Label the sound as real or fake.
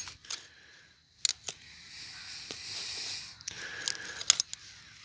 real